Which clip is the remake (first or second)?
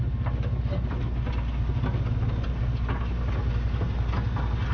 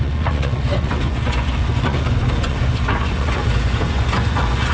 second